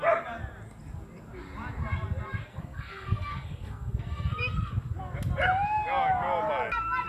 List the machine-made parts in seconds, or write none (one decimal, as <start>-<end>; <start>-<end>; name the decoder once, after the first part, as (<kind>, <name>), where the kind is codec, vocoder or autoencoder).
2.5-4.7 (codec, SNAC)